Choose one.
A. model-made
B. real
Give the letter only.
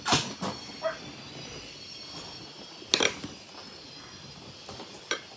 B